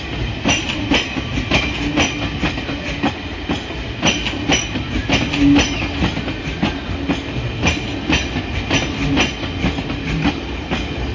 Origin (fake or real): real